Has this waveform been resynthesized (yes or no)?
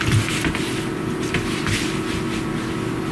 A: no